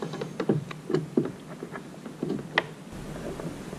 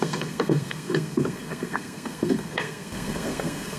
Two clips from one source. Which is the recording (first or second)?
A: first